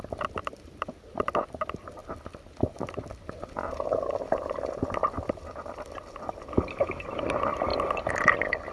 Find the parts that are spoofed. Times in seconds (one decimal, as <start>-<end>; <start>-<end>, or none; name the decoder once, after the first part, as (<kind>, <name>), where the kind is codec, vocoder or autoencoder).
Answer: none